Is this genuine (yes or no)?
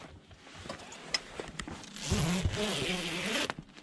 yes